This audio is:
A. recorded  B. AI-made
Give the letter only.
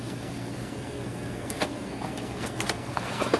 B